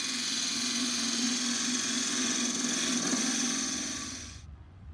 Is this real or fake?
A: fake